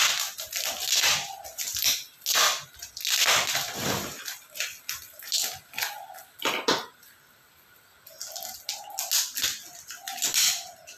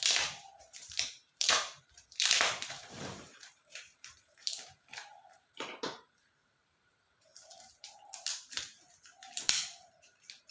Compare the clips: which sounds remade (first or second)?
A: second